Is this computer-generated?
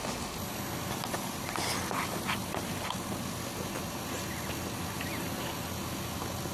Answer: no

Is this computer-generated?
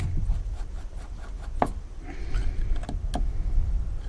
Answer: no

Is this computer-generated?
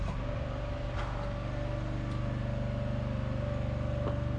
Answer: no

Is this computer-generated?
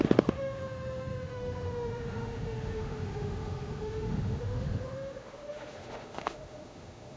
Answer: yes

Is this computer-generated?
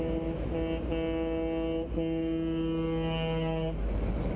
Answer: no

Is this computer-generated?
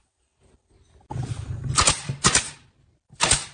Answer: no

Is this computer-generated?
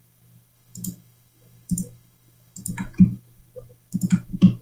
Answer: yes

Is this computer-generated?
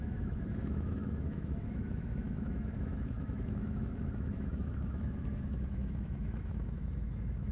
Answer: yes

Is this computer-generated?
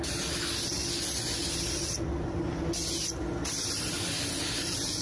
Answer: no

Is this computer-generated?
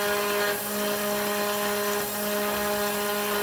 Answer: no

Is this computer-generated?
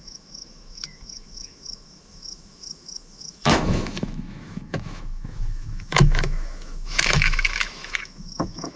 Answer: yes